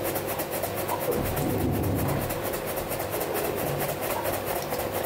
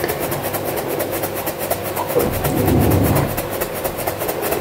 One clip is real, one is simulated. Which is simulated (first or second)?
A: second